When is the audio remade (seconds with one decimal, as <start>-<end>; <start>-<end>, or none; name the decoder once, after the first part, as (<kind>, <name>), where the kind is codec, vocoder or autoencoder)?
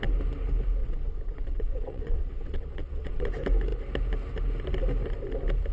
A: 0.8-3.3 (vocoder, WaveNeXt)